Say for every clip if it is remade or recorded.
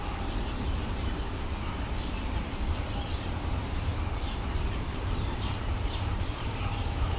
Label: remade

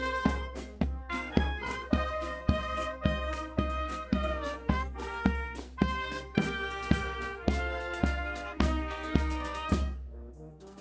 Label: remade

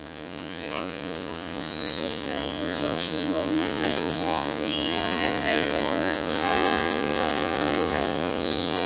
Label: remade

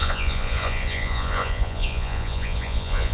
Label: remade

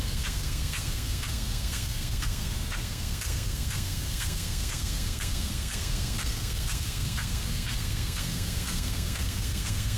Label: remade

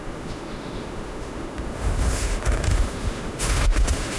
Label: remade